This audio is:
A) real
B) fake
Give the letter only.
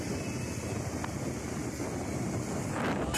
A